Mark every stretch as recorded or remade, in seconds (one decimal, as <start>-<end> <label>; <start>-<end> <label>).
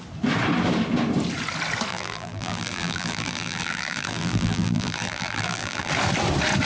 0.0-1.9 recorded; 1.9-5.9 remade; 5.9-6.7 recorded